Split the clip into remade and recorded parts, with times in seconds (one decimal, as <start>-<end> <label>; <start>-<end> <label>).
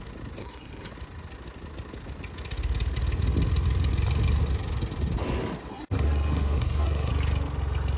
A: 0.0-0.4 recorded; 0.4-0.9 remade; 0.9-5.7 recorded; 5.7-7.1 remade; 7.1-8.0 recorded